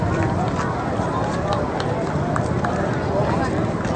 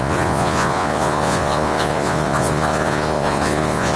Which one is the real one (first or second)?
first